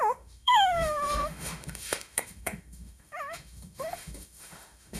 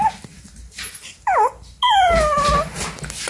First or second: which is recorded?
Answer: second